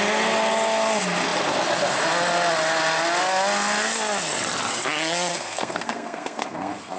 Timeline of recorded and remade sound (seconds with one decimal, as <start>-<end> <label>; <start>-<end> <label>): 0.0-5.3 recorded; 5.3-7.0 remade